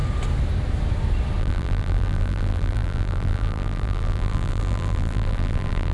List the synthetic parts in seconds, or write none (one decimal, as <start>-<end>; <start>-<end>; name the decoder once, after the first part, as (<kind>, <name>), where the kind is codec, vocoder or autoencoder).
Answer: 1.4-5.9 (vocoder, BigVGAN v2)